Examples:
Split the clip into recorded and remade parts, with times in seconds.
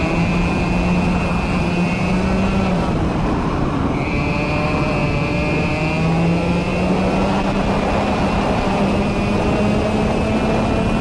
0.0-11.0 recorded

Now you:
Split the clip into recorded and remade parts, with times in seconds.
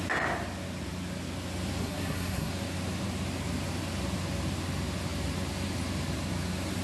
0.0-1.8 recorded; 1.8-2.5 remade; 2.5-6.8 recorded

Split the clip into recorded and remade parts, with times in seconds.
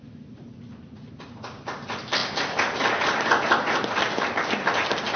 0.0-5.2 recorded